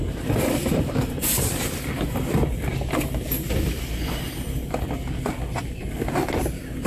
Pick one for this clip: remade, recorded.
remade